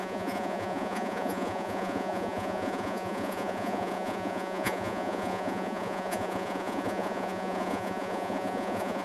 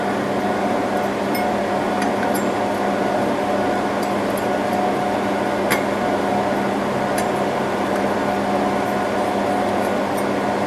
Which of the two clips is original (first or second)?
second